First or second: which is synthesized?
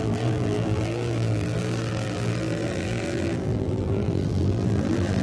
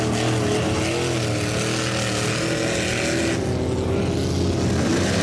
first